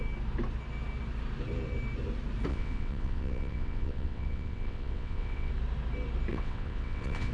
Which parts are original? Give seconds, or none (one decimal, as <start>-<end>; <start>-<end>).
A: 0.0-2.5; 5.5-6.3